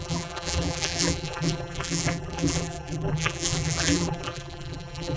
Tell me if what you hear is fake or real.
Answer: fake